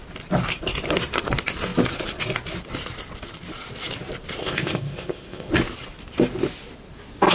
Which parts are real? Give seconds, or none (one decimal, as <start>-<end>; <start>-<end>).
0.0-4.4; 5.5-7.3